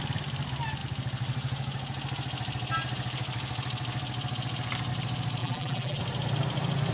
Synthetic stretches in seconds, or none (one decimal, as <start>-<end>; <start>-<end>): 5.4-6.0